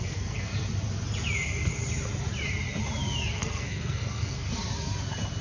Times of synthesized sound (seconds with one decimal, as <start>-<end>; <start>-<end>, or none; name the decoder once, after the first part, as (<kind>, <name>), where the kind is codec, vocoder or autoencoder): 0.0-0.5 (codec, SNAC); 3.3-4.6